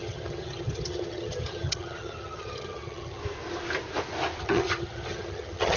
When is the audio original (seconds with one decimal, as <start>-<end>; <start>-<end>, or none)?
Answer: 3.2-4.4